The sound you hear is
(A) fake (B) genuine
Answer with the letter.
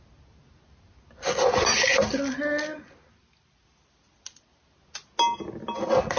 B